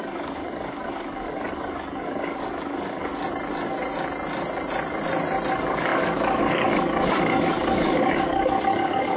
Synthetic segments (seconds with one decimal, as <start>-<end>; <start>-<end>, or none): 0.0-3.1; 5.5-9.2